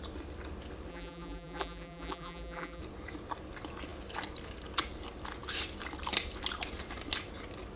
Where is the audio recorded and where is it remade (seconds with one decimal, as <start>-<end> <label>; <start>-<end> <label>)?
0.0-0.9 recorded; 0.9-2.8 remade; 2.8-7.8 recorded